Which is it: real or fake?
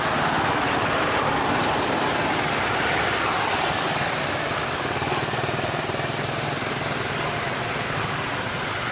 real